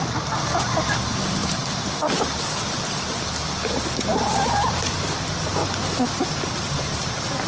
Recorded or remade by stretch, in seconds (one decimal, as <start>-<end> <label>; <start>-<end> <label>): 0.0-7.5 recorded